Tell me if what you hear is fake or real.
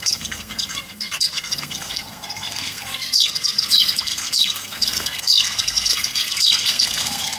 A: fake